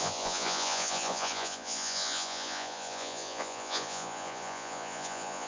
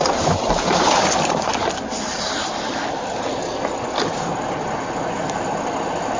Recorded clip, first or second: second